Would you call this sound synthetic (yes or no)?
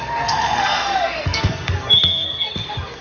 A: yes